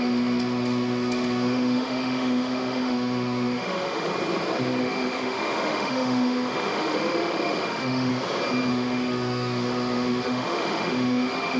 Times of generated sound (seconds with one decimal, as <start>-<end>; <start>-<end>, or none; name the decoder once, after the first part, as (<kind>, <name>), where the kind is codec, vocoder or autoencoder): 0.0-4.1 (autoencoder, DAC-VAE); 4.8-8.1; 8.7-11.6